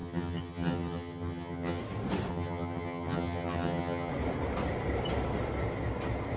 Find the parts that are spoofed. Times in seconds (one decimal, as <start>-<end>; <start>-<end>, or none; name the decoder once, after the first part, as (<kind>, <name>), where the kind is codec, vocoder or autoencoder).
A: 0.0-1.8 (vocoder, HiFi-GAN); 2.3-4.1